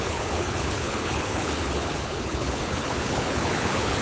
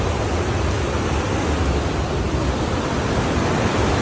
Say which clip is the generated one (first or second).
first